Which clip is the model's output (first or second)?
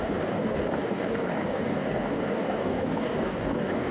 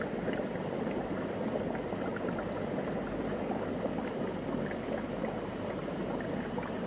first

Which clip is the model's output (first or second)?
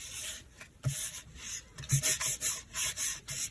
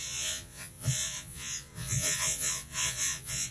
second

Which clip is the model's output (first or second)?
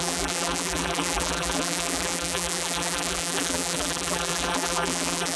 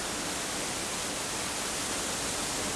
first